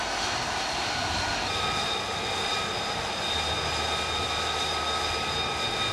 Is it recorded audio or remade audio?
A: recorded